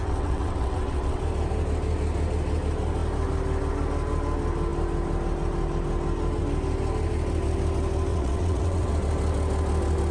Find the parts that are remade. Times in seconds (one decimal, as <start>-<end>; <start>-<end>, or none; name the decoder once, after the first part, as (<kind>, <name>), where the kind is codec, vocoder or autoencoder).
0.0-1.2 (vocoder, WaveNeXt); 8.1-8.9